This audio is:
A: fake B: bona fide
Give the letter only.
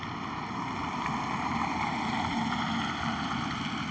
B